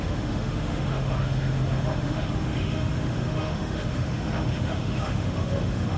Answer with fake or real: fake